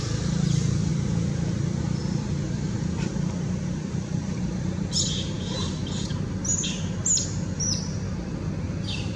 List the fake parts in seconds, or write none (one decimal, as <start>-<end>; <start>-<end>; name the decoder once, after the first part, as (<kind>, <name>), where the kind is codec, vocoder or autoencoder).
0.0-0.9 (vocoder, BigVGAN v2); 1.8-5.8